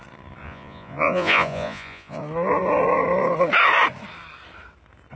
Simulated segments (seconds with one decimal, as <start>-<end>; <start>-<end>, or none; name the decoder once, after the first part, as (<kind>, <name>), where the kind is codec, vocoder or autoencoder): 0.4-2.2 (vocoder, Vocos)

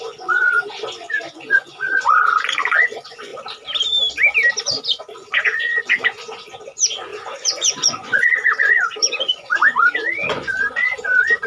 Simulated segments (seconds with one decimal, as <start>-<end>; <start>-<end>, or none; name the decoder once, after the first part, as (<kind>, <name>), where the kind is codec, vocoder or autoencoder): 0.0-3.3 (vocoder, Vocos); 4.6-11.5